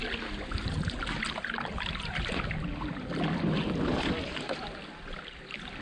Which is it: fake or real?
real